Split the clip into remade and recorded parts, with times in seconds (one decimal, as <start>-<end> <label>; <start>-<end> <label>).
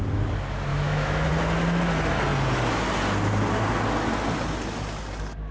0.0-0.7 recorded; 0.7-1.3 remade; 1.3-5.5 recorded